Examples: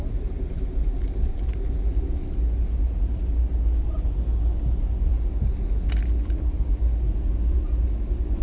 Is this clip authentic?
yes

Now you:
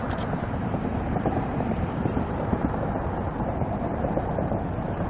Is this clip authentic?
no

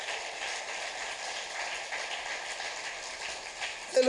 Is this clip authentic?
yes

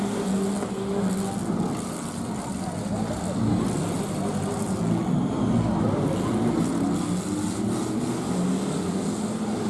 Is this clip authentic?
yes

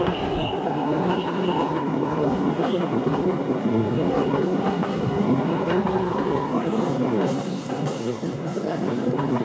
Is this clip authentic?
no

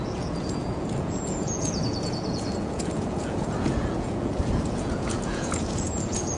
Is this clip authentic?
no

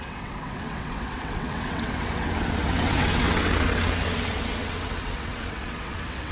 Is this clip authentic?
no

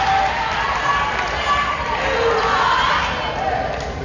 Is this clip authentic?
yes